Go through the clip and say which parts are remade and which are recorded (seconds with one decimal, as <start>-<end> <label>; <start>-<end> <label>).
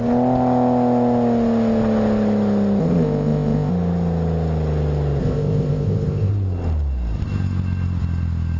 0.0-2.8 recorded; 2.8-3.7 remade; 3.7-5.2 recorded; 5.2-6.3 remade; 6.3-8.6 recorded